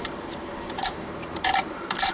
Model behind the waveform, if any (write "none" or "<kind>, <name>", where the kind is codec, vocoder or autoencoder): vocoder, BigVGAN v2